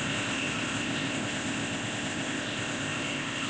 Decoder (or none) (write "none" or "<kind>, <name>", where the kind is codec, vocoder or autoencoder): codec, ZipCodec